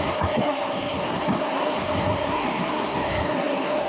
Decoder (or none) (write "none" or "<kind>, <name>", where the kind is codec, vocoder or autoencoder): codec, SNAC